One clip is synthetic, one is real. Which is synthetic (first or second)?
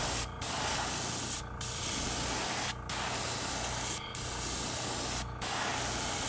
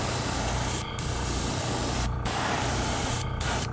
second